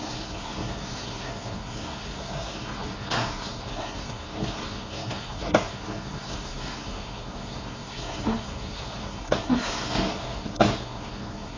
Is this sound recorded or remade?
remade